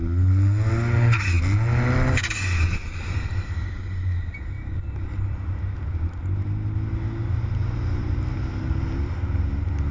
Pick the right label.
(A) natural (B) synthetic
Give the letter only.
A